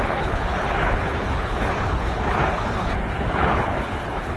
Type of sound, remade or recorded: remade